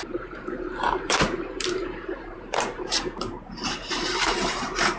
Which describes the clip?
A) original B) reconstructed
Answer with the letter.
B